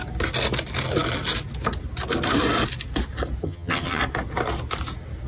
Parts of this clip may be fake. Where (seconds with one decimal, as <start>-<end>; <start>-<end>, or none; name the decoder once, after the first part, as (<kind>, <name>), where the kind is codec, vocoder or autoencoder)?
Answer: 3.4-4.0 (vocoder, HiFi-GAN)